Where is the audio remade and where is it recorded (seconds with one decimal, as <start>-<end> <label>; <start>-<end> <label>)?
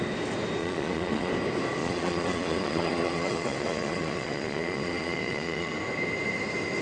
0.0-0.6 recorded; 0.6-1.3 remade; 1.3-1.8 recorded; 1.8-5.8 remade; 5.8-6.8 recorded